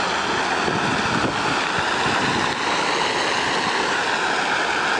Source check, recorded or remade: recorded